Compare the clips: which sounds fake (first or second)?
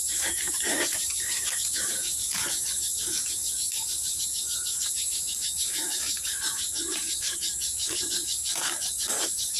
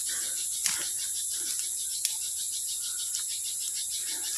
first